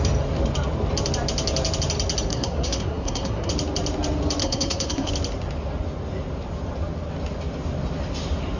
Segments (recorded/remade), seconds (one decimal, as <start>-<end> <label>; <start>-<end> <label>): 0.0-2.3 recorded; 2.3-3.5 remade; 3.5-4.4 recorded; 4.4-5.1 remade; 5.1-8.6 recorded